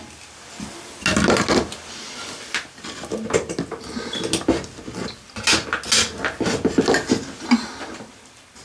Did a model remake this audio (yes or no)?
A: no